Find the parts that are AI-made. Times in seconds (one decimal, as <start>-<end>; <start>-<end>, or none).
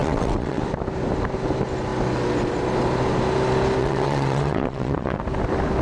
0.0-0.6; 3.8-5.2